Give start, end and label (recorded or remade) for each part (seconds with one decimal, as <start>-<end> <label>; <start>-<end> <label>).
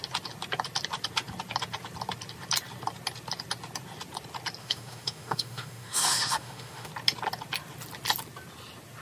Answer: 0.0-4.6 recorded; 4.6-6.9 remade; 6.9-9.0 recorded